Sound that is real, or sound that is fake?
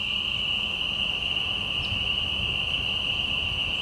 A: real